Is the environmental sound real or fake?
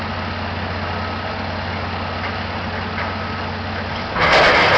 real